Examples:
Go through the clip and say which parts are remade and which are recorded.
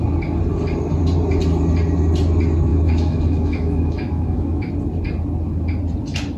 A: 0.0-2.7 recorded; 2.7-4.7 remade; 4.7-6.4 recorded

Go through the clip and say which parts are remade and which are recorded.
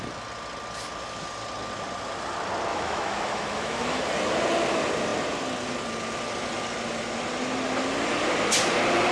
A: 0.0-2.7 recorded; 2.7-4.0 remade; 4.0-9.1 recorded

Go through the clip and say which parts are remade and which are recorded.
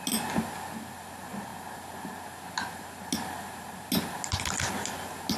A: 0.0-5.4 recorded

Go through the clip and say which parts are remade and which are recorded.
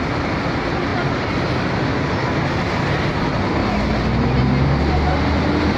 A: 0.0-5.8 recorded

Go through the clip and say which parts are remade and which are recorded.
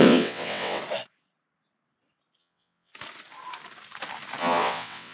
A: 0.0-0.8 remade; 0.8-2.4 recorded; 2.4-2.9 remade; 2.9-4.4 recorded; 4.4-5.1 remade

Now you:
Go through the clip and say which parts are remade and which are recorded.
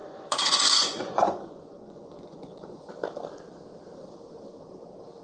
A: 0.0-2.9 remade; 2.9-5.2 recorded